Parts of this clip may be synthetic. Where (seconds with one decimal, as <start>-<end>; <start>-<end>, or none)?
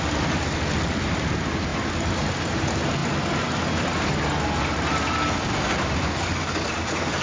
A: none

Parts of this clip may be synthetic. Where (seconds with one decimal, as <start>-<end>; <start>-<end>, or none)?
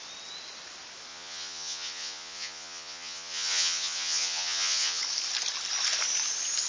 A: 1.1-5.0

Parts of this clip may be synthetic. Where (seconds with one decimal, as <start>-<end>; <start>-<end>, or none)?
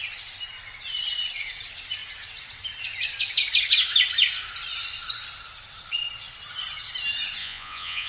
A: 7.4-8.1